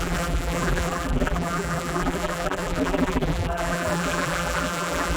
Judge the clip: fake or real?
fake